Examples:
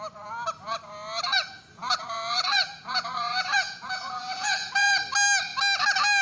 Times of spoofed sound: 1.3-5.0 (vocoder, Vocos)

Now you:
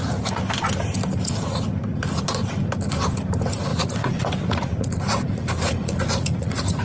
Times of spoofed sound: 3.7-6.8 (vocoder, Vocos)

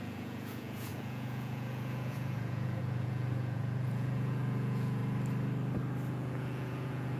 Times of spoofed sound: 0.0-5.0 (vocoder, Vocos); 6.1-7.2